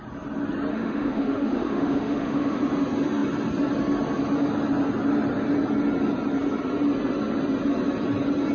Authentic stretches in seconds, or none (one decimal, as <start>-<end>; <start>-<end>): 0.0-0.7; 2.6-8.5